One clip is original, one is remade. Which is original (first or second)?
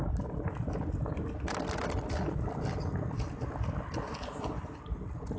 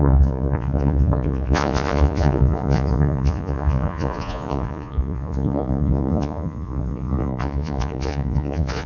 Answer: first